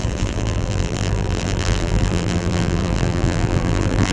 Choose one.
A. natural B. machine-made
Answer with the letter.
B